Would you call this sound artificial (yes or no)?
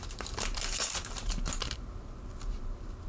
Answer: yes